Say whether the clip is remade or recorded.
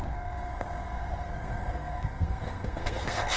remade